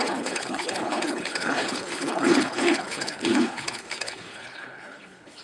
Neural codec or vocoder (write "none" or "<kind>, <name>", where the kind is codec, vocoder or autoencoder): codec, HILCodec